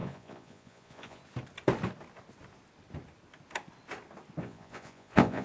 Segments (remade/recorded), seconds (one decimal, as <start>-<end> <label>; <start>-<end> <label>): 0.0-1.2 remade; 1.2-4.4 recorded; 4.4-5.4 remade

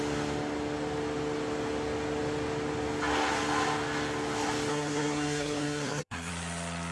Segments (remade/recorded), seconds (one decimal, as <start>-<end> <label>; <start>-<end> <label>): 0.0-4.7 recorded; 4.7-6.3 remade; 6.3-6.9 recorded

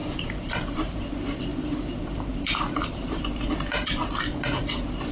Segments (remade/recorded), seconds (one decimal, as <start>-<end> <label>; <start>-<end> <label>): 0.0-1.0 remade; 1.0-1.5 recorded; 1.5-3.2 remade; 3.2-5.1 recorded

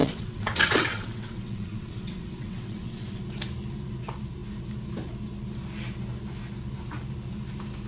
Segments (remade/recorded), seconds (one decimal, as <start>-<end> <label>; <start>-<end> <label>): 0.0-3.2 remade; 3.2-7.9 recorded

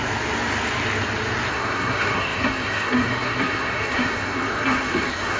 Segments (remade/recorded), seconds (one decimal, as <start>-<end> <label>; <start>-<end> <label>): 0.0-1.5 recorded; 1.5-5.4 remade

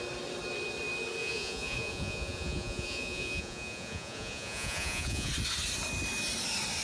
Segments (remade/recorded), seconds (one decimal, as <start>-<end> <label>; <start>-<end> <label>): 0.0-1.2 recorded; 1.2-5.3 remade; 5.3-6.8 recorded

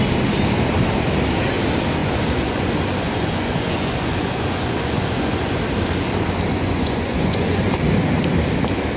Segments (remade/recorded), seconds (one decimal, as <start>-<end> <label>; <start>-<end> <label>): 0.0-2.0 recorded; 2.0-5.6 remade; 5.6-6.5 recorded; 6.5-7.6 remade; 7.6-9.0 recorded

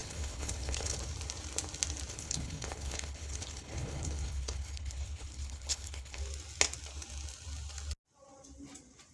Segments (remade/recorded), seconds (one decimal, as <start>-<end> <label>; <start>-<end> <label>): 0.0-1.0 remade; 1.0-2.1 recorded; 2.1-6.2 remade; 6.2-9.1 recorded